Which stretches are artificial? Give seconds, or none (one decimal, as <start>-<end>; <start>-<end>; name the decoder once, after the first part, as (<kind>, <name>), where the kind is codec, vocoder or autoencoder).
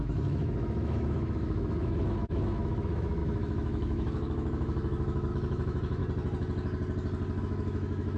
0.0-6.0 (autoencoder, DAC-VAE); 7.4-8.2